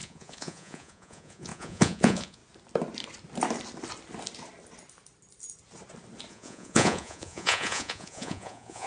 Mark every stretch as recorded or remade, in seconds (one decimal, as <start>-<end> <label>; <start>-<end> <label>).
0.0-2.4 remade; 2.4-6.3 recorded; 6.3-8.9 remade